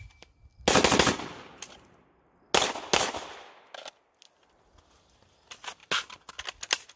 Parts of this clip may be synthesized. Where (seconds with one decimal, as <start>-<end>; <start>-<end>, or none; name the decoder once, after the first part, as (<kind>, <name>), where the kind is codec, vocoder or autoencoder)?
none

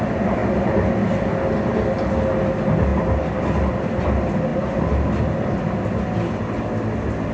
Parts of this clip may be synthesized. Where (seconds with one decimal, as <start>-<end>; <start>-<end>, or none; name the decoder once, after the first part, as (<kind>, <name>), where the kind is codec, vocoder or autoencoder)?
none

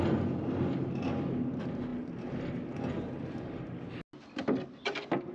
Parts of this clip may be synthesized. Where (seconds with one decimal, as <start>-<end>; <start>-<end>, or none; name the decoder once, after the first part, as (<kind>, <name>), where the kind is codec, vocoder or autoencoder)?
none

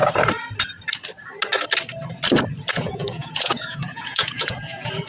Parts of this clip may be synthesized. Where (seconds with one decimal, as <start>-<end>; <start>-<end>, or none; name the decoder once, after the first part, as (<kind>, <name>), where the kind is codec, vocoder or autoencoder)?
2.7-5.1 (vocoder, Vocos)

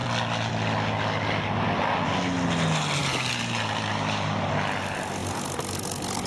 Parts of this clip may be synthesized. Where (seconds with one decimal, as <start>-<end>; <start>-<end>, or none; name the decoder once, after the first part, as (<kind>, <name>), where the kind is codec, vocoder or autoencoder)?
3.0-4.5 (vocoder, BigVGAN v2)

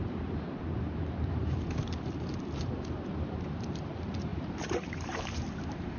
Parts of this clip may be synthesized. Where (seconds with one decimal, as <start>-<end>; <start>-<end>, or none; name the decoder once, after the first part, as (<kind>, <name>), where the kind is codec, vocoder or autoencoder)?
0.0-6.0 (vocoder, BigVGAN v2)

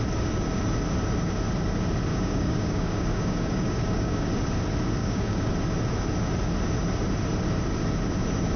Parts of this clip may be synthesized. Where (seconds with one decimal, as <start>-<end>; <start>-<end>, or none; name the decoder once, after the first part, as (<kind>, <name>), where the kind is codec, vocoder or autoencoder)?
2.1-4.3 (codec, DAC); 5.0-5.5

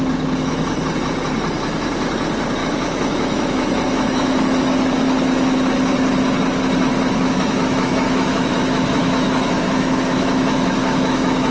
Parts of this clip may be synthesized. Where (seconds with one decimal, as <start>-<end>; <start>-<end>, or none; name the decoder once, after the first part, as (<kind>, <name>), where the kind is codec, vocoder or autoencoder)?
2.6-4.6 (autoencoder, DAC-VAE); 6.9-11.5